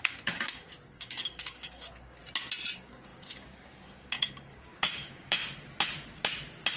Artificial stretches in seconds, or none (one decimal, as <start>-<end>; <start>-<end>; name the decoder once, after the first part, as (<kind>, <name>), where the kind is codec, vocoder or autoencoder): 0.0-2.2 (codec, DAC); 2.7-5.4